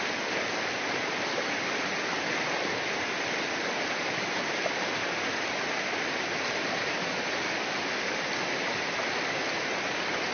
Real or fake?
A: real